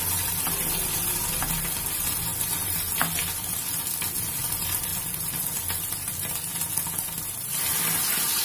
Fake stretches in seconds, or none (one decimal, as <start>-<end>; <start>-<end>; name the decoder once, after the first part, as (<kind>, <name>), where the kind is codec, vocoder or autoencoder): 0.0-6.5 (vocoder, BigVGAN v2); 7.2-8.4